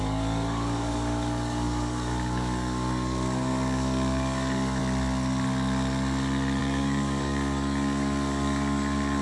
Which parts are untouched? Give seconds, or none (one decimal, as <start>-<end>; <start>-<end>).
4.8-6.6